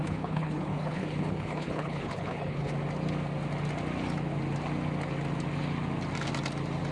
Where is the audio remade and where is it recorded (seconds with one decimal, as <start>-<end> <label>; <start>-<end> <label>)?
0.0-2.7 remade; 2.7-6.9 recorded